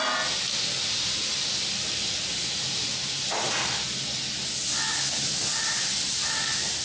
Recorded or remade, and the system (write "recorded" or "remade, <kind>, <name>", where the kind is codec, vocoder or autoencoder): recorded